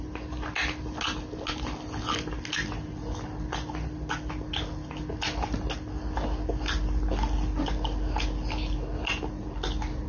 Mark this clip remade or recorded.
recorded